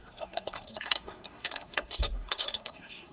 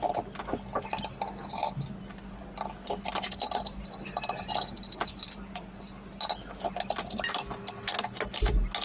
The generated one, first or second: first